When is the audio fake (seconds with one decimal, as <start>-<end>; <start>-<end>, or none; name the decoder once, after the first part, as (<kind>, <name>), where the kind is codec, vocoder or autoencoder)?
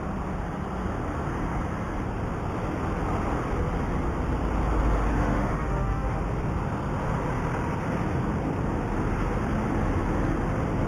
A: 5.1-6.2 (autoencoder, DAC-VAE)